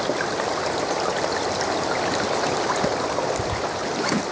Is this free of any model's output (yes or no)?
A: yes